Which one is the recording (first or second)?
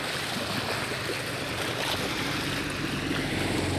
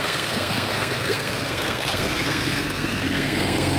first